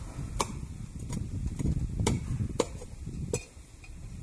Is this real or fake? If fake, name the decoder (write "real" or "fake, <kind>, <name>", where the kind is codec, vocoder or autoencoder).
real